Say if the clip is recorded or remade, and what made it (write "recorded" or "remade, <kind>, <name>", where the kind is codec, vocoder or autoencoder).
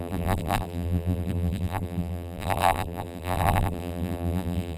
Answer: remade, vocoder, BigVGAN v2